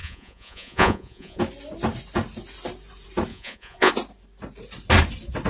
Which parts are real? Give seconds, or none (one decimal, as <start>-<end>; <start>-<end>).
1.4-3.3; 3.9-5.5